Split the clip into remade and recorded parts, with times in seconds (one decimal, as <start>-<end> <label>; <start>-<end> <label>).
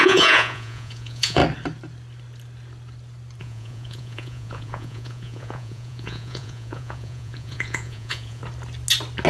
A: 0.0-1.4 remade; 1.4-3.4 recorded; 3.4-8.4 remade; 8.4-9.3 recorded